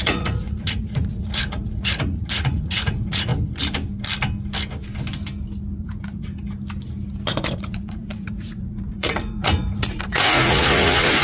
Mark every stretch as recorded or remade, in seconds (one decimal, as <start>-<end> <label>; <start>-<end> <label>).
0.0-3.3 remade; 3.3-5.8 recorded; 5.8-6.3 remade; 6.3-7.3 recorded; 7.3-11.2 remade